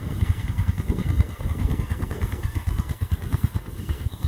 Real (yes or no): no